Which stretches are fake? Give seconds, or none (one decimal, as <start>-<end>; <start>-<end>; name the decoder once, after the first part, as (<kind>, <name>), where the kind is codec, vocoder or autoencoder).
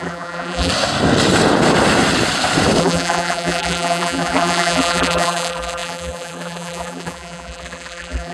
0.0-0.7 (vocoder, BigVGAN v2); 2.8-8.3